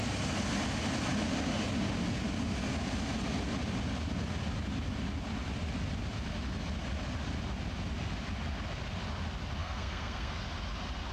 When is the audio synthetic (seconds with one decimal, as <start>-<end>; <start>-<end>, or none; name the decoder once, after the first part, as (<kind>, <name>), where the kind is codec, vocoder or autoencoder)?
9.6-10.3 (codec, SNAC)